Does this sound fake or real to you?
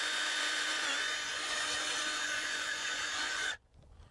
fake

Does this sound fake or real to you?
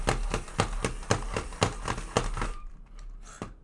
real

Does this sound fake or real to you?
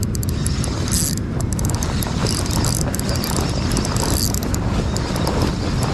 real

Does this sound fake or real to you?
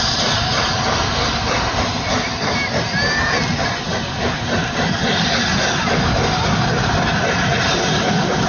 real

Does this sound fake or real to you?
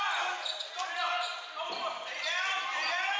real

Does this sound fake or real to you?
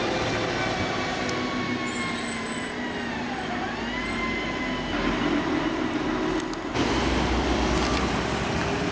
real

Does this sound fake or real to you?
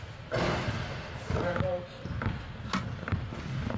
real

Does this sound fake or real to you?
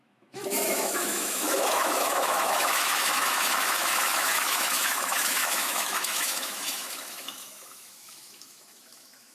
fake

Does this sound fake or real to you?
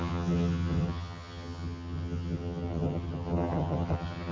fake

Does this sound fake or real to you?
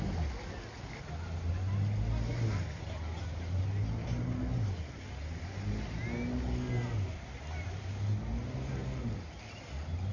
real